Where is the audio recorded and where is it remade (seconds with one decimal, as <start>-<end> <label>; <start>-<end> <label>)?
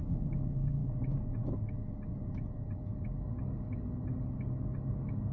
0.0-5.3 recorded